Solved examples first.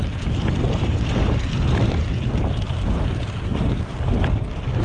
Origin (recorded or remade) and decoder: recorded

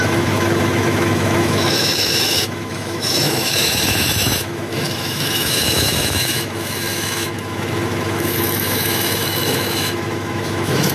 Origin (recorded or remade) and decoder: remade, autoencoder, DAC-VAE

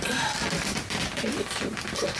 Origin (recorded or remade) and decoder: recorded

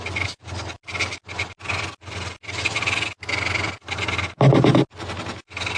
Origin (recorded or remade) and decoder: recorded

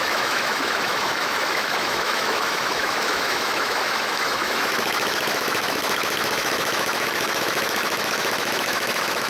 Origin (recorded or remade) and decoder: remade, autoencoder, DAC-VAE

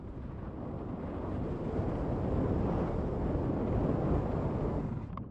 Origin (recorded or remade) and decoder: recorded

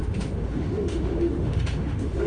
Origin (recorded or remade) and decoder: remade, autoencoder, DAC-VAE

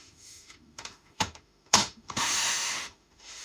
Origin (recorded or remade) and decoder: remade, autoencoder, DAC-VAE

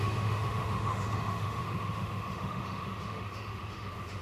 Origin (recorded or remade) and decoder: remade, autoencoder, DAC-VAE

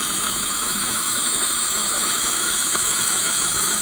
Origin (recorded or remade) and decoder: remade, autoencoder, DAC-VAE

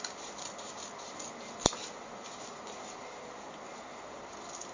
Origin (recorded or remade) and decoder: recorded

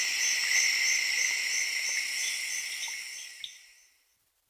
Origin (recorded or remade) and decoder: recorded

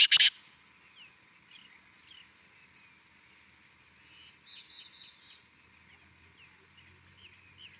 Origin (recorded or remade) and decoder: recorded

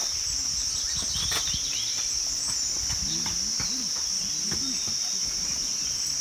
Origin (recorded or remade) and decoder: recorded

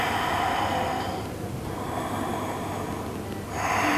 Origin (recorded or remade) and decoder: recorded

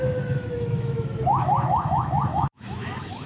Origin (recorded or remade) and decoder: remade, autoencoder, DAC-VAE